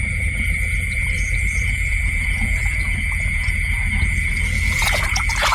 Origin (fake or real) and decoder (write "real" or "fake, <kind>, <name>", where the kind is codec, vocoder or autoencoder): fake, vocoder, Vocos